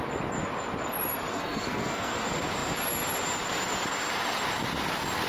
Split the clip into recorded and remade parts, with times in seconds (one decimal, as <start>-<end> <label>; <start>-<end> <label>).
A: 0.0-1.3 recorded; 1.3-2.2 remade; 2.2-5.3 recorded